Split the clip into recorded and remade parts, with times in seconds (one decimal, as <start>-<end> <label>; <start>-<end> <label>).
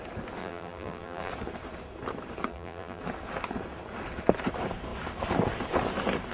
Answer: 0.0-0.4 recorded; 0.4-1.3 remade; 1.3-2.5 recorded; 2.5-3.0 remade; 3.0-6.3 recorded